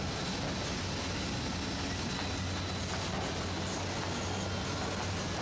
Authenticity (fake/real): real